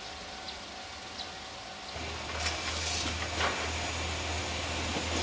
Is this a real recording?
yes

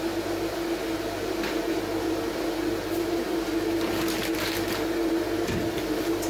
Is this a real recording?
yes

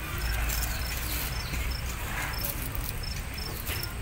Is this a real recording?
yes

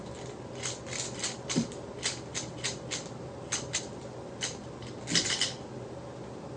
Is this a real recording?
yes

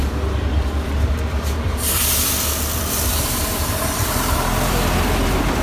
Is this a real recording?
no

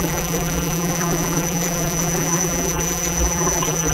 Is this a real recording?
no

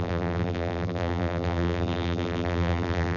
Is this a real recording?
no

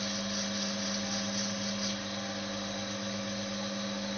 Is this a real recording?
yes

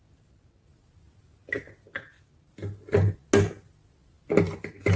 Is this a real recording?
yes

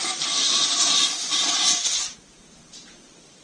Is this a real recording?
no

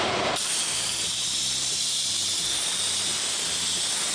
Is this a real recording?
no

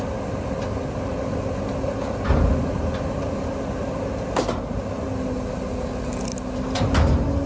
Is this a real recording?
yes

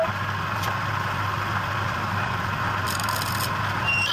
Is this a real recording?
yes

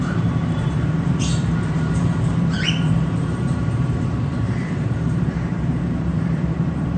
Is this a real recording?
no